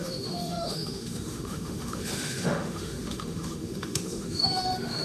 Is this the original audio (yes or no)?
no